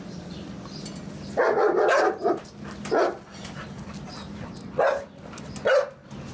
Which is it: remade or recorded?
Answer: recorded